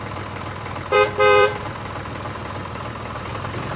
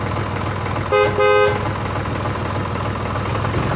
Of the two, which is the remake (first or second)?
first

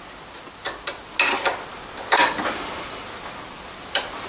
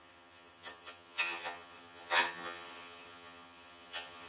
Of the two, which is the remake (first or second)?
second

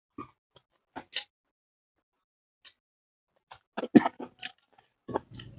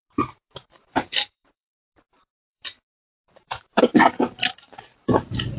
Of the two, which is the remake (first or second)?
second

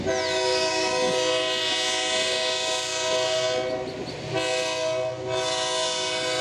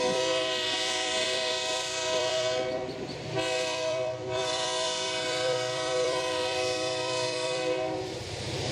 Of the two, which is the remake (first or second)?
second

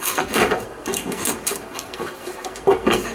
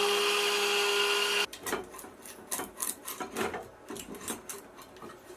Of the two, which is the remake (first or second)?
first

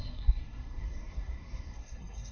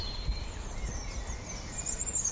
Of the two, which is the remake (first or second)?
first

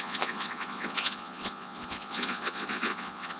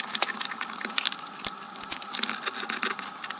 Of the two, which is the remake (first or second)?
first